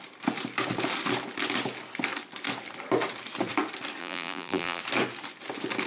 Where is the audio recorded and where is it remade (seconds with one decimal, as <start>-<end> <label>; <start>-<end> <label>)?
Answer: 0.0-4.0 recorded; 4.0-4.8 remade; 4.8-5.9 recorded